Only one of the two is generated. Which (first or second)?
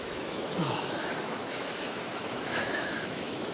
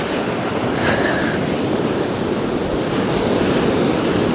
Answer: first